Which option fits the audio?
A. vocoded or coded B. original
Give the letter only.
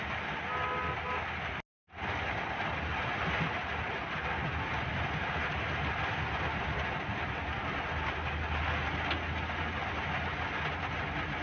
B